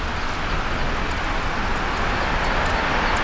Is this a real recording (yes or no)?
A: yes